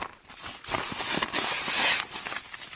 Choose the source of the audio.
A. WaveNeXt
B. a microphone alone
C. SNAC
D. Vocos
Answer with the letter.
B